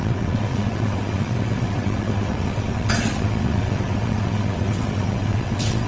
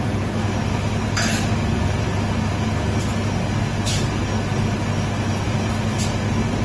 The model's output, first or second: first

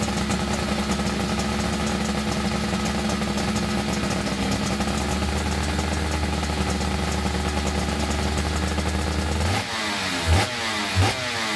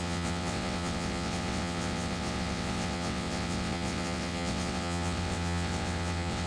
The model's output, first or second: second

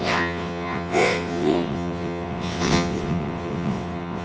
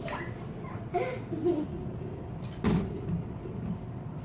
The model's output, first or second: first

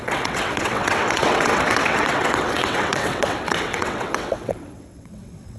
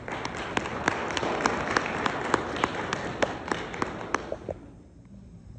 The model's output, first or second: first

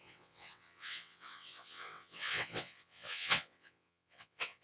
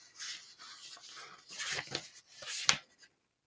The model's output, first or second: first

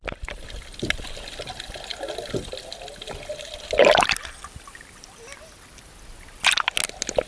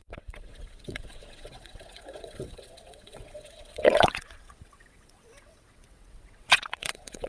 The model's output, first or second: second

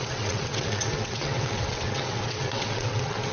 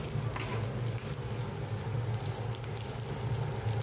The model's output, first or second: first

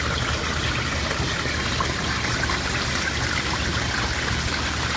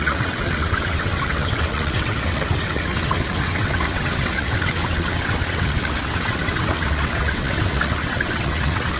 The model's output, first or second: second